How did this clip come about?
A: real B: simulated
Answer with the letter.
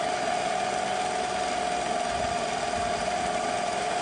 A